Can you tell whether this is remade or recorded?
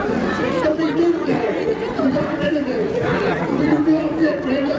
remade